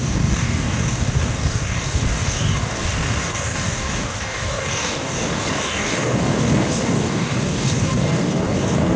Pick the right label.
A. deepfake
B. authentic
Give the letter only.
A